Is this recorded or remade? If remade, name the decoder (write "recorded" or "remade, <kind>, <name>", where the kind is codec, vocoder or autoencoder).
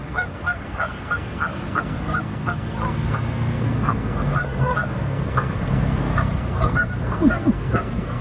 remade, codec, SNAC